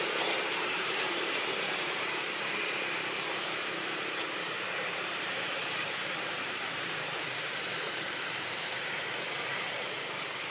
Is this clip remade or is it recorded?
remade